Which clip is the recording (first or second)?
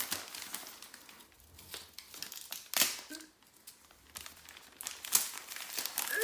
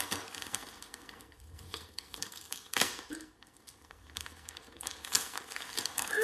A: first